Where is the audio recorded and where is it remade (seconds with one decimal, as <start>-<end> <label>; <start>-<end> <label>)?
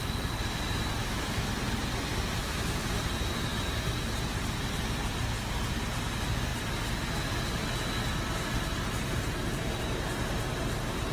0.0-1.0 recorded; 1.0-1.5 remade; 1.5-2.4 recorded; 2.4-2.9 remade; 2.9-11.1 recorded